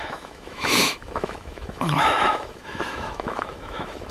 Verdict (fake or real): fake